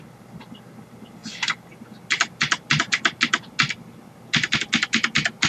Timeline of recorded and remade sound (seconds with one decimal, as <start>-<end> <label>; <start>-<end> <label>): 0.0-5.5 recorded